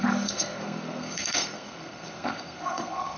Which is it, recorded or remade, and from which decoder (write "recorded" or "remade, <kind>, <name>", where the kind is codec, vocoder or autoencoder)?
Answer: remade, codec, SNAC